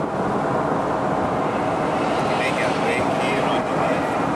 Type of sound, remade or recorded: recorded